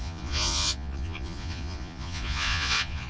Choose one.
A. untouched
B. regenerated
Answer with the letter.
B